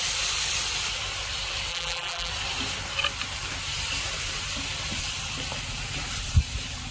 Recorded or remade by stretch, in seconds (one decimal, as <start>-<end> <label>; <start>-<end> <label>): 0.0-1.7 recorded; 1.7-2.3 remade; 2.3-6.9 recorded